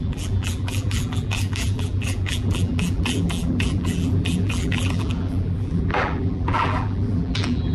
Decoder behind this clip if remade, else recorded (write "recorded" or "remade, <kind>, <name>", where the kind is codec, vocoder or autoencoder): remade, vocoder, BigVGAN v2